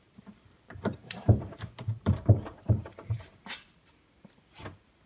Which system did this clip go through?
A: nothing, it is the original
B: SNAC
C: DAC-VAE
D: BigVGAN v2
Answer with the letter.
D